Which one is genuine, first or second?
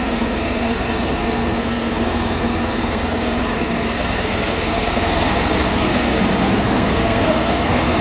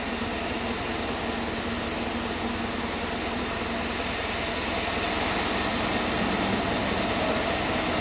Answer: second